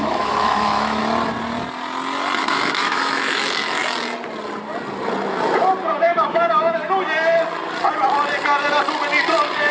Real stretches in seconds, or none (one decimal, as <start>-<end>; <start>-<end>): 1.0-2.4; 3.8-6.0; 6.8-9.7